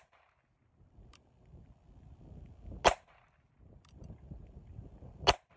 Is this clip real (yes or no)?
yes